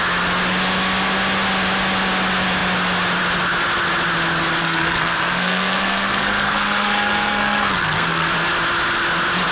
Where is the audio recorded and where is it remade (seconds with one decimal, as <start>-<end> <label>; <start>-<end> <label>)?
0.0-4.6 recorded; 4.6-8.3 remade; 8.3-9.5 recorded

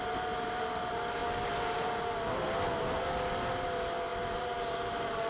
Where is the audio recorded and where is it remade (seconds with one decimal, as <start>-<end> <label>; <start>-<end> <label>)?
0.0-5.3 recorded

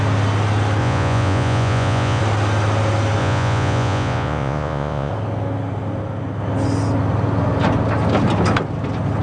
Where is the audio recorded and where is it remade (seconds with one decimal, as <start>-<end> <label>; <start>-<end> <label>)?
0.0-0.8 recorded; 0.8-2.2 remade; 2.2-3.2 recorded; 3.2-5.1 remade; 5.1-9.2 recorded

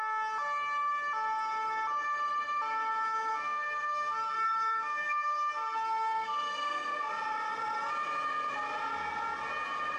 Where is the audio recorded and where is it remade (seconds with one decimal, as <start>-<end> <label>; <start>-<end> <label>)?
0.0-3.3 recorded; 3.3-7.1 remade; 7.1-10.0 recorded

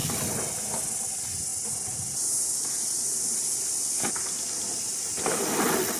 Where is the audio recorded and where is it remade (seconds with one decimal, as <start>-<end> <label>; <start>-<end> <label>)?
0.0-6.0 recorded